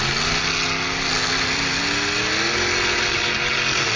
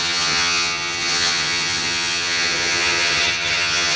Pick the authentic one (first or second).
first